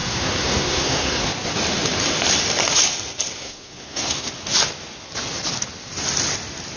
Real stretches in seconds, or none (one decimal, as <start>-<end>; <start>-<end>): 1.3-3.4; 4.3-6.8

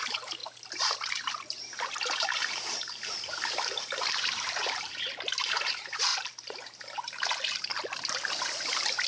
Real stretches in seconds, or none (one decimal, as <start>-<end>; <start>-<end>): 6.1-6.7; 7.7-9.1

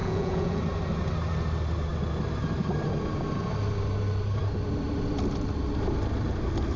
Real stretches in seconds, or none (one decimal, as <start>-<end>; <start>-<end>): 0.6-6.8

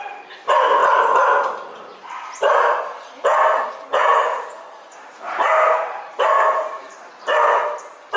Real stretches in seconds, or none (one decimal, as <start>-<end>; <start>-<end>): 0.0-4.3; 7.1-8.2